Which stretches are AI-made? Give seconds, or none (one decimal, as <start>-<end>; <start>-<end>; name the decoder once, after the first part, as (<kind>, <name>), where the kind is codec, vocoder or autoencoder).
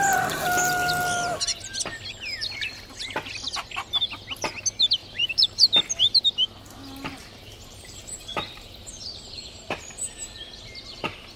5.0-6.2 (vocoder, BigVGAN v2); 7.1-9.8